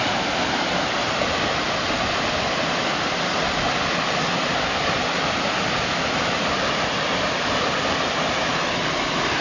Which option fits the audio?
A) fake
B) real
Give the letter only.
B